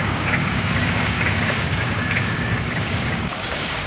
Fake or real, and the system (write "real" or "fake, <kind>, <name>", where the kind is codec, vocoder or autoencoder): fake, codec, DAC